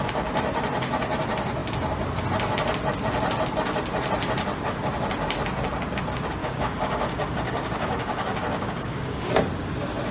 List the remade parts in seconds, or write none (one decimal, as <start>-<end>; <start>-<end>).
6.4-9.3